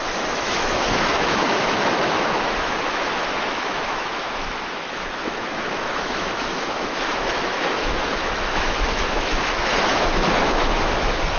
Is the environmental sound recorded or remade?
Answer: remade